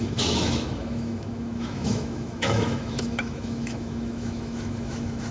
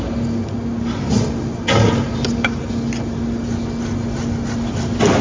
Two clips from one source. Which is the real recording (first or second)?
second